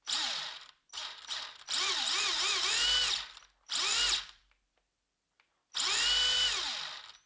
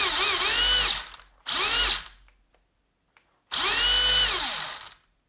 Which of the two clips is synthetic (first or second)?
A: first